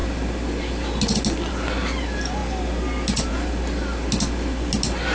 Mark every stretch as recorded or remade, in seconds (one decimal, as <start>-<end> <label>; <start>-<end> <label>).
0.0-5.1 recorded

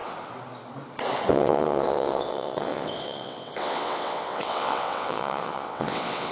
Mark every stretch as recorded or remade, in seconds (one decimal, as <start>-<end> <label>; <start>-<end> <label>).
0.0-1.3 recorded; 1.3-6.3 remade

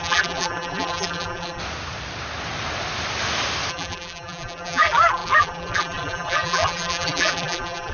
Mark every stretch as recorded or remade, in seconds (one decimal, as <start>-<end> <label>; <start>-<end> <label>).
0.0-1.6 remade; 1.6-3.7 recorded; 3.7-7.9 remade

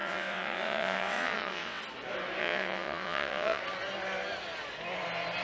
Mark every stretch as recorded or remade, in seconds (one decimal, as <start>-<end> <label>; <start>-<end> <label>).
0.0-1.8 remade; 1.8-2.4 recorded; 2.4-3.6 remade; 3.6-5.4 recorded